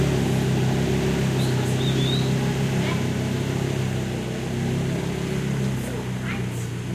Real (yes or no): yes